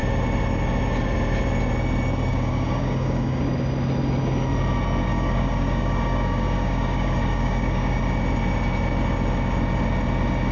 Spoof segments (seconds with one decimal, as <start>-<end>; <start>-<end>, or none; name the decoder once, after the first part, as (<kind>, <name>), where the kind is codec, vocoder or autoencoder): 2.3-3.4 (codec, DAC); 5.1-8.0